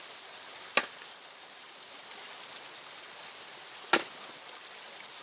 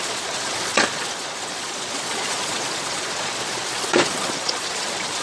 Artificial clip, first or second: second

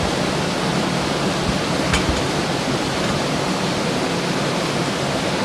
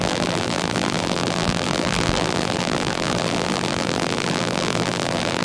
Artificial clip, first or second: second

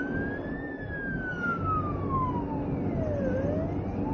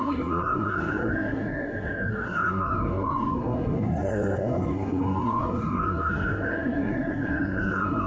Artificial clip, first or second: second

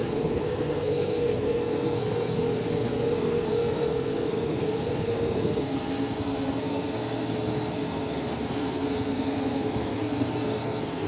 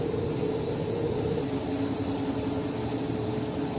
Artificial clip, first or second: first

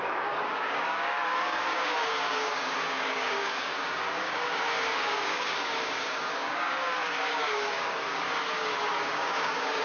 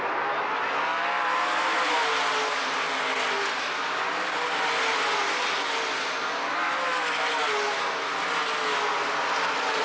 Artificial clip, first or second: first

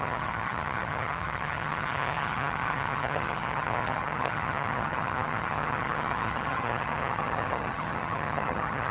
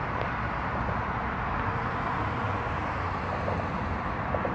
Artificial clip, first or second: first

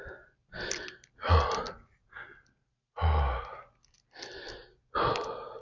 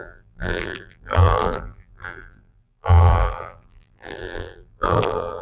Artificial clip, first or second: second